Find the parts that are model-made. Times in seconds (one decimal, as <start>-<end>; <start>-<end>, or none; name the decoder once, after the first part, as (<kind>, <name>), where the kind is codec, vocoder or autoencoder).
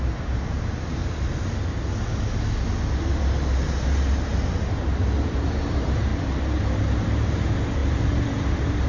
0.0-1.0 (vocoder, BigVGAN v2); 5.3-6.1; 7.0-8.9